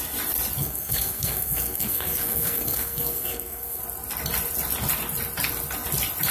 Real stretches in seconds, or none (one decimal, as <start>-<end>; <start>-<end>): 0.0-0.6; 3.8-6.3